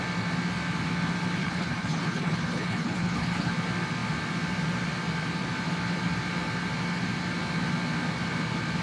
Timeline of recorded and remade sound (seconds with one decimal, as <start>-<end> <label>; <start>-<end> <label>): 0.0-1.4 recorded; 1.4-3.5 remade; 3.5-8.8 recorded